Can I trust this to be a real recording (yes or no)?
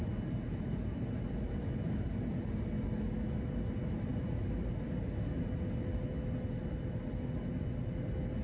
yes